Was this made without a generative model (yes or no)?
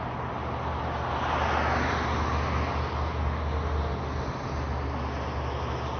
yes